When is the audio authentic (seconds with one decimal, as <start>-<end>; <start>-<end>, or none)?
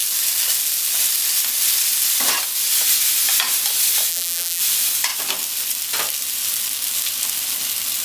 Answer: 0.0-4.1; 4.6-8.0